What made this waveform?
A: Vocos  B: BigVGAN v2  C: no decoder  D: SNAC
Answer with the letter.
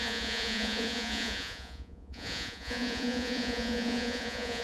A